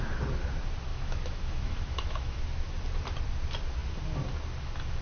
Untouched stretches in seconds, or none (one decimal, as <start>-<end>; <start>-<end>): 0.0-0.9; 2.4-5.0

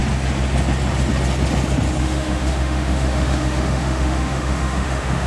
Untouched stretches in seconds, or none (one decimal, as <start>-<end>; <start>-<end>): 0.0-2.0

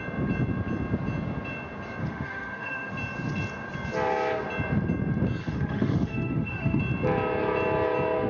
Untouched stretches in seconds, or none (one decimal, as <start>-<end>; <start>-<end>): 0.0-2.0; 2.9-5.4; 6.8-8.3

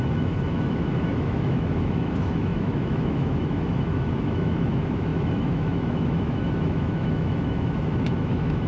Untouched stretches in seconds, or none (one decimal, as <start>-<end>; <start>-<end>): none

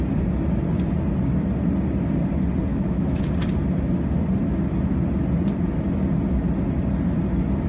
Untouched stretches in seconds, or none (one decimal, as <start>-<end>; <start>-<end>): 0.0-2.7; 3.2-7.7

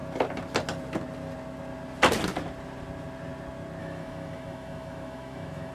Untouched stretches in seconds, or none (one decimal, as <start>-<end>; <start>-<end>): 0.0-3.8

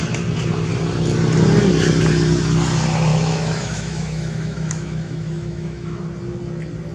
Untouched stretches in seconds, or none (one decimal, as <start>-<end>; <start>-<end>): 0.0-3.1; 6.0-6.9